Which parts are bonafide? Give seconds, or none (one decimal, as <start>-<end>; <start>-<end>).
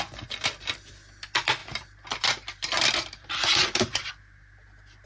0.0-1.6; 4.1-5.1